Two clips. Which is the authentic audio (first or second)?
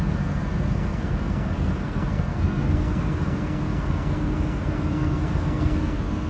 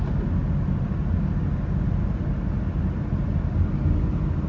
second